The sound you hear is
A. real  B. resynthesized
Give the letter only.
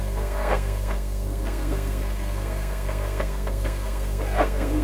B